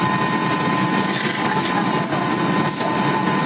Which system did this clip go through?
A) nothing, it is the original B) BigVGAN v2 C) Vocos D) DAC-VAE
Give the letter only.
A